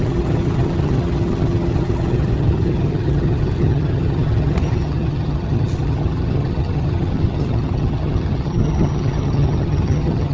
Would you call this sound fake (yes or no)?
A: yes